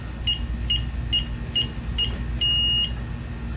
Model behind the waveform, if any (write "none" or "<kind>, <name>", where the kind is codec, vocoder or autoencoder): none